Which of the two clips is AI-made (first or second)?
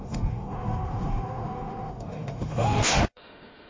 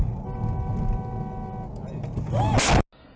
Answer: first